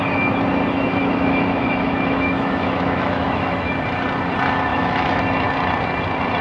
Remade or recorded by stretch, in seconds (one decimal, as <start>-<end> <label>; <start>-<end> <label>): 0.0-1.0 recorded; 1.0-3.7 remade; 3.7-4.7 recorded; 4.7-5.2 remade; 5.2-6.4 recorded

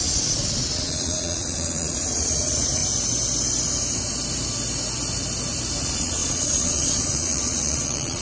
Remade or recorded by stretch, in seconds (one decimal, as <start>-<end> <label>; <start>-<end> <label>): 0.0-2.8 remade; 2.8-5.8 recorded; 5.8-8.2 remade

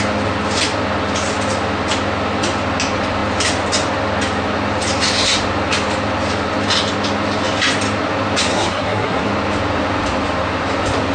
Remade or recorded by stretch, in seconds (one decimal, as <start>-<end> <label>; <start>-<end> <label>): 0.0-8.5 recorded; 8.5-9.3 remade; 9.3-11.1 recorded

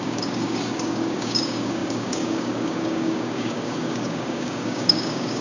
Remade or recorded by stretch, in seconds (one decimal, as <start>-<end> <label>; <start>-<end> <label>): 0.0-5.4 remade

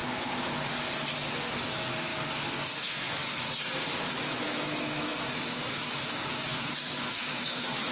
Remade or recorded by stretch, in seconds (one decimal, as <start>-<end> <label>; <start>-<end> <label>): 0.0-1.7 recorded; 1.7-2.1 remade; 2.1-2.8 recorded; 2.8-3.2 remade; 3.2-4.0 recorded; 4.0-7.9 remade